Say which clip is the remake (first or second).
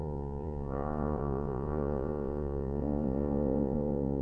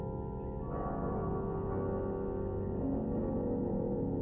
first